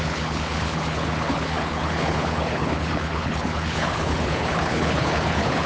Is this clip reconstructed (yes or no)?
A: yes